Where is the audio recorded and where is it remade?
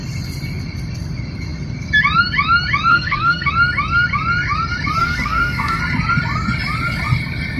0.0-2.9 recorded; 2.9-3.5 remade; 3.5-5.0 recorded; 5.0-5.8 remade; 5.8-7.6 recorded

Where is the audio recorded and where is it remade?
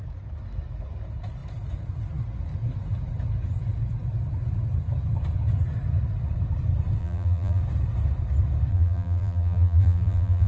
0.0-7.0 recorded; 7.0-7.6 remade; 7.6-8.7 recorded; 8.7-10.5 remade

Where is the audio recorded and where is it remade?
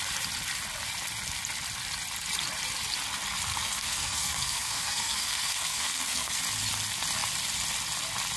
0.0-3.5 recorded; 3.5-6.4 remade; 6.4-8.4 recorded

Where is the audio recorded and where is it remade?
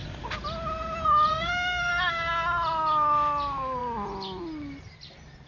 0.0-1.3 recorded; 1.3-1.9 remade; 1.9-5.5 recorded